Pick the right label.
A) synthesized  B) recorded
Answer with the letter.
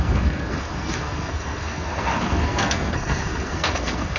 A